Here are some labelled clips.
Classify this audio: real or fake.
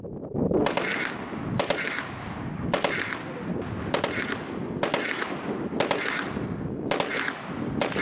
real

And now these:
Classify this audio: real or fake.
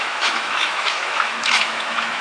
fake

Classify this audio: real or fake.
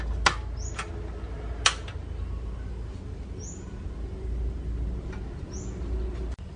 real